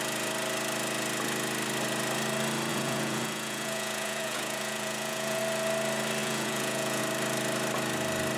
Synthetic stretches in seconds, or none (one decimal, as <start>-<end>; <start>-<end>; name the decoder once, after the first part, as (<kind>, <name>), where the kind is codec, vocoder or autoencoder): 2.7-5.4 (vocoder, Vocos); 6.2-7.0